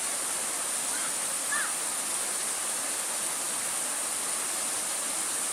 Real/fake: real